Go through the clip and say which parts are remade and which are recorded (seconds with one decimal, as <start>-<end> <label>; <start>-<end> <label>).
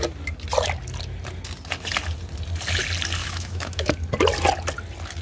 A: 0.0-3.2 recorded; 3.2-3.9 remade; 3.9-5.2 recorded